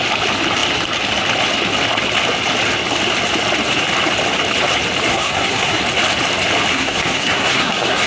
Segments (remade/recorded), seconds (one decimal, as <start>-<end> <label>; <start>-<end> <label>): 0.0-5.1 recorded; 5.1-5.8 remade; 5.8-6.7 recorded; 6.7-8.1 remade